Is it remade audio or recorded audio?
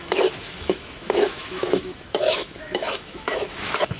remade